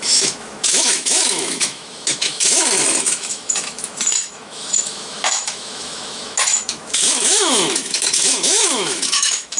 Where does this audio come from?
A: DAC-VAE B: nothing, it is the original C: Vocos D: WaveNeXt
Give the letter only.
A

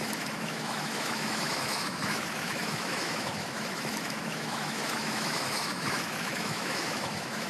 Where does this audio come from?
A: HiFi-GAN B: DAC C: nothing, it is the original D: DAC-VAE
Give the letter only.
D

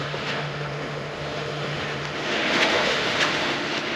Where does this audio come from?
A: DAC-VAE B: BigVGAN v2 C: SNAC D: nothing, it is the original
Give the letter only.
A